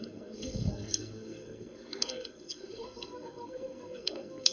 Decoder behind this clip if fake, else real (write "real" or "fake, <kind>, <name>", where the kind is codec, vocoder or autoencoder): fake, codec, SNAC